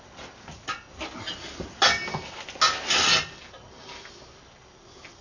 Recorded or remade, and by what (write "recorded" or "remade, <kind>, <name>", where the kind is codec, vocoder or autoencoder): recorded